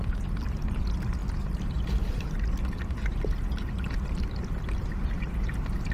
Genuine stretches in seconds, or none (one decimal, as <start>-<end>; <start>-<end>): 0.0-5.9